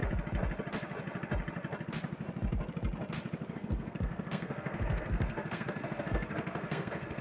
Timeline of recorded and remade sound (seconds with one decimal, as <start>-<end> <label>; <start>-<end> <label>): 0.0-3.5 recorded; 3.5-7.2 remade

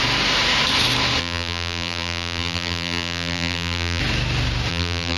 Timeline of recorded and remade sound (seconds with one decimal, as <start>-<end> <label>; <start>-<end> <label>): 0.0-1.2 recorded; 1.2-4.0 remade; 4.0-4.7 recorded; 4.7-5.2 remade